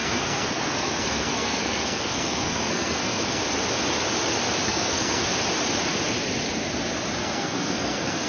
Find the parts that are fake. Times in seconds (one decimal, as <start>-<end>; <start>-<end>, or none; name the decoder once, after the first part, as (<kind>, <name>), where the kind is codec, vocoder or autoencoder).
0.0-3.4 (codec, SNAC); 4.6-5.4; 7.2-8.3

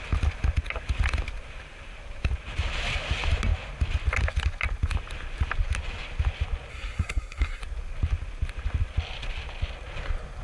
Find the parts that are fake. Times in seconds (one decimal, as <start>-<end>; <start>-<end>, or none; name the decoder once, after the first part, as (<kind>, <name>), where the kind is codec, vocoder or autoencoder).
6.7-7.6 (codec, SNAC)

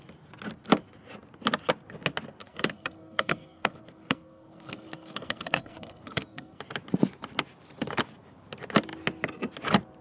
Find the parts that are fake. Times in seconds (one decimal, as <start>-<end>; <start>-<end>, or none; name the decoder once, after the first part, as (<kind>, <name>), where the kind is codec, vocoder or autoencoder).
2.4-6.6 (codec, SNAC)

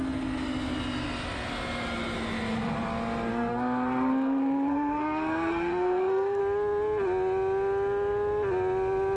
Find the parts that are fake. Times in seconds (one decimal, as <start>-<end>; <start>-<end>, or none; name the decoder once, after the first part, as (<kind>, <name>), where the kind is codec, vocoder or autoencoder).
3.3-6.4 (codec, SNAC)

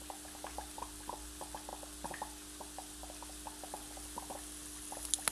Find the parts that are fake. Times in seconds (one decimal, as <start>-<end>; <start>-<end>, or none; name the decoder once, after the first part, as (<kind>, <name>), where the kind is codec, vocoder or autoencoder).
none

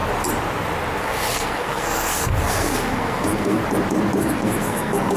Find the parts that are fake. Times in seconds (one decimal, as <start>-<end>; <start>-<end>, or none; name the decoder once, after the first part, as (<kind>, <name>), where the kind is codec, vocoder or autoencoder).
1.0-3.6 (codec, SNAC); 4.2-5.2